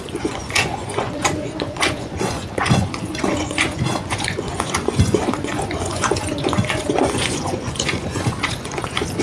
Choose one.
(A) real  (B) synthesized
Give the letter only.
B